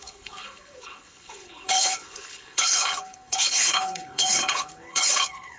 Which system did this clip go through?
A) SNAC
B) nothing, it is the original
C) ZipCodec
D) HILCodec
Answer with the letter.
D